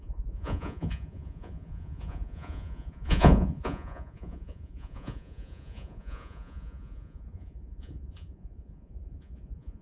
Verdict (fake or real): fake